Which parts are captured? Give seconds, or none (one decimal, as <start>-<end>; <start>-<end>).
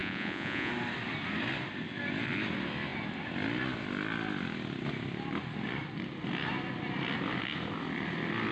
0.7-8.5